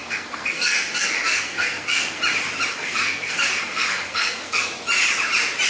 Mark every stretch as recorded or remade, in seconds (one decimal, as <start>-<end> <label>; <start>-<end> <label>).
0.0-2.2 remade; 2.2-2.7 recorded; 2.7-4.6 remade; 4.6-5.7 recorded